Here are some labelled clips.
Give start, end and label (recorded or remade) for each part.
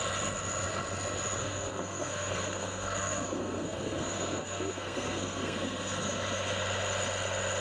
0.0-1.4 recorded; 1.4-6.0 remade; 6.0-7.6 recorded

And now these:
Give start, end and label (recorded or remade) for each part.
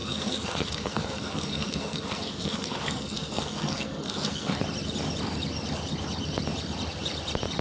0.0-4.6 remade; 4.6-7.6 recorded